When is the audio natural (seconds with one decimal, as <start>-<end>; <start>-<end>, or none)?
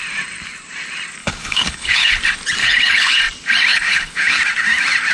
0.0-1.2; 2.2-2.6; 3.2-3.7; 4.4-5.1